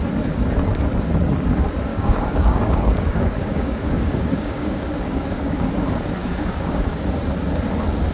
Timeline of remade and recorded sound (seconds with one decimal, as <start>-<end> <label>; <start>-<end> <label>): 0.0-1.9 recorded; 1.9-5.7 remade; 5.7-6.2 recorded; 6.2-7.0 remade; 7.0-8.1 recorded